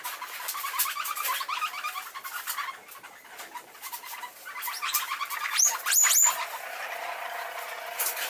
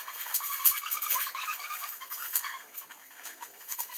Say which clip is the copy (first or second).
second